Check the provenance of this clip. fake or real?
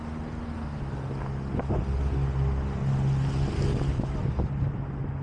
real